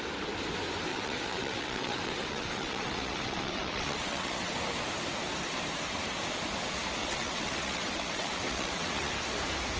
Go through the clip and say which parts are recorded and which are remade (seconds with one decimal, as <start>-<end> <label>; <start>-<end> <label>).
0.0-0.9 recorded; 0.9-4.5 remade; 4.5-7.0 recorded; 7.0-9.1 remade; 9.1-9.8 recorded